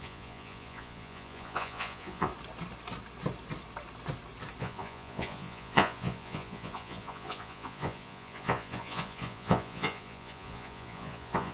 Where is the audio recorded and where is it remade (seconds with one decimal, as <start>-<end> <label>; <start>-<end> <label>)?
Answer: 0.0-2.3 remade; 2.3-4.6 recorded; 4.6-11.5 remade

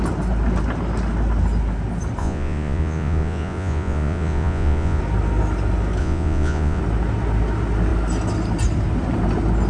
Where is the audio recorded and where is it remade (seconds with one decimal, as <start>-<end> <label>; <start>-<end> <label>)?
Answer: 0.0-2.2 recorded; 2.2-5.0 remade; 5.0-6.0 recorded; 6.0-6.8 remade; 6.8-9.7 recorded

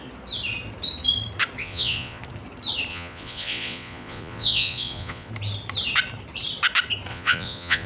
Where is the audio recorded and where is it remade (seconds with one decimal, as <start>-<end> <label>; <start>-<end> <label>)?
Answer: 0.0-1.6 recorded; 1.6-2.2 remade; 2.2-2.9 recorded; 2.9-5.3 remade; 5.3-7.1 recorded; 7.1-7.9 remade

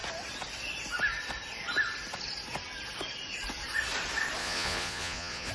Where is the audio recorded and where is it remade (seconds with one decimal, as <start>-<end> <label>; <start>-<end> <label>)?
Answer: 0.0-4.4 recorded; 4.4-5.5 remade

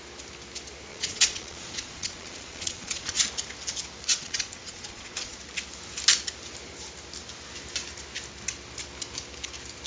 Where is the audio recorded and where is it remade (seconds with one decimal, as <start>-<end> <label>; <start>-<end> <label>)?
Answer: 0.0-0.9 recorded; 0.9-3.2 remade; 3.2-4.1 recorded; 4.1-5.4 remade; 5.4-9.9 recorded

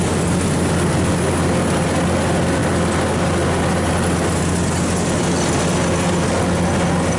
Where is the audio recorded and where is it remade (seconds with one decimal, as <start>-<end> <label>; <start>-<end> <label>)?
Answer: 0.0-7.2 recorded